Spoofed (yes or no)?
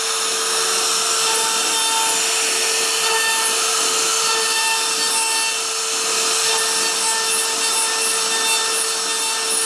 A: no